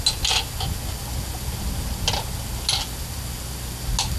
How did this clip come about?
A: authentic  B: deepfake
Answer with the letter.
A